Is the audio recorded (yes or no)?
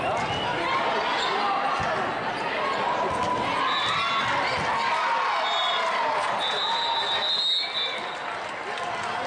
yes